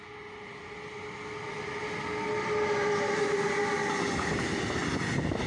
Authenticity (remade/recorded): recorded